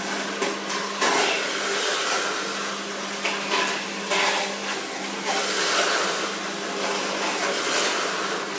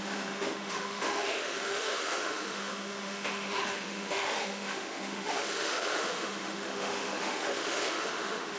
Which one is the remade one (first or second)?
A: second